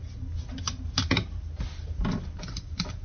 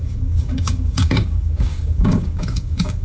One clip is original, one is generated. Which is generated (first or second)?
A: second